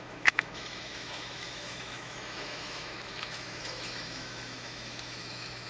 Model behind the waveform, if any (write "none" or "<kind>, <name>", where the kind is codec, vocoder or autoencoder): autoencoder, DAC-VAE